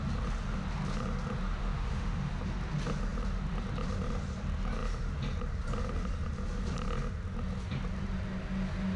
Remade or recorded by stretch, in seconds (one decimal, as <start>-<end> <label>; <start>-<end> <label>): 0.0-1.6 recorded; 1.6-2.3 remade; 2.3-9.0 recorded